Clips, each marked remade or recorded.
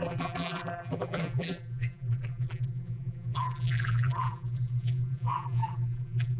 remade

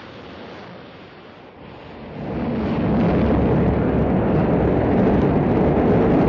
recorded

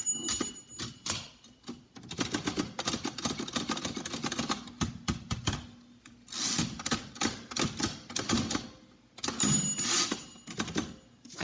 recorded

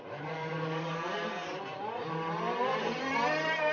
remade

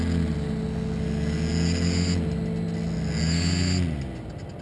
recorded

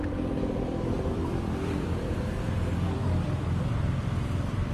remade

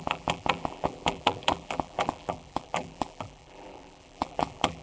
remade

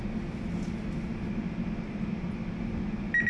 recorded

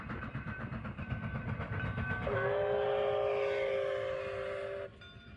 recorded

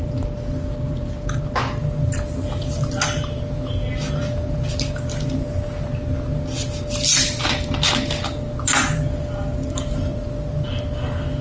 recorded